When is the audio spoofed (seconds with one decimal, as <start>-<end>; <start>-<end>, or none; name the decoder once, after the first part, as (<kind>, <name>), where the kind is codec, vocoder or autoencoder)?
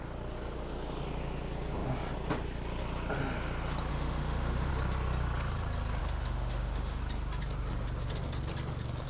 3.9-4.7 (autoencoder, DAC-VAE); 6.0-7.0